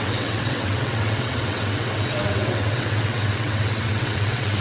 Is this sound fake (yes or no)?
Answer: yes